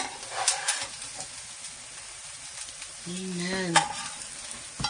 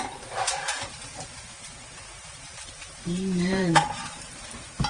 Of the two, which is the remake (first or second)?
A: second